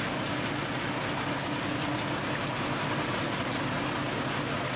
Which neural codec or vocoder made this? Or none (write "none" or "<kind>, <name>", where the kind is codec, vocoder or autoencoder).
none